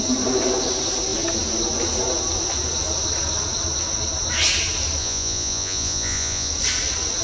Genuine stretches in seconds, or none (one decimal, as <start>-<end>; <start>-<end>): 0.0-5.0; 6.5-7.2

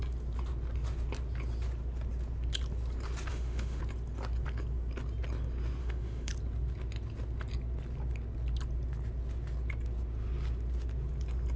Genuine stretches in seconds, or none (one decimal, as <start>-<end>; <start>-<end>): 0.0-3.3; 3.8-5.8; 6.3-11.6

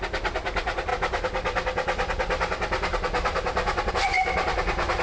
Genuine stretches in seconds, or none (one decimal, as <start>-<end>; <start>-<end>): 0.0-5.0

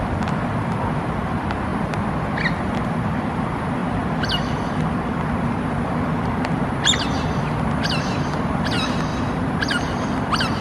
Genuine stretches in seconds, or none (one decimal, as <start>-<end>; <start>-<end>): 1.7-2.6

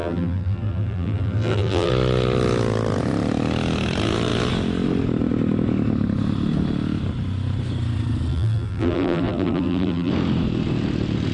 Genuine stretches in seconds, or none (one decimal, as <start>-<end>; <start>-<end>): 1.9-8.3; 10.1-11.3